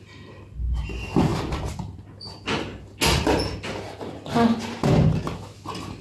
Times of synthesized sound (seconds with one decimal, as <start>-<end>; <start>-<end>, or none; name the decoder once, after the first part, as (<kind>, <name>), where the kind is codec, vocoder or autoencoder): none